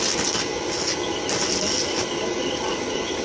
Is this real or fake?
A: real